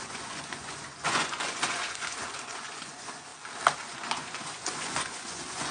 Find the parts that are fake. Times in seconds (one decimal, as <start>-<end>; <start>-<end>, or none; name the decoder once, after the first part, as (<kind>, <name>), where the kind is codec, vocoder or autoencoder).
0.0-3.3 (vocoder, Vocos); 3.8-5.7